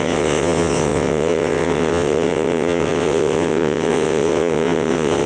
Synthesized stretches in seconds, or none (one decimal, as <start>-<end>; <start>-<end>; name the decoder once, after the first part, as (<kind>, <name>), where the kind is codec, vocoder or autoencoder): 0.0-5.3 (vocoder, WaveNeXt)